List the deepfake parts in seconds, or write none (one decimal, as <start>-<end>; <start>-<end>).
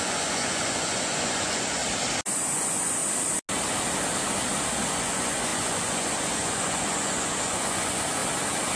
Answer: 0.0-1.8; 2.3-3.0; 4.9-8.2